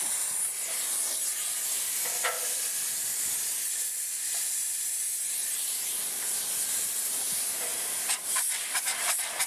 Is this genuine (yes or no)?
yes